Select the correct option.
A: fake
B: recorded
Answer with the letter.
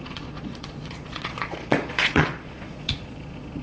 A